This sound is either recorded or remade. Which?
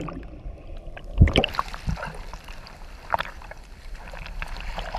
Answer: remade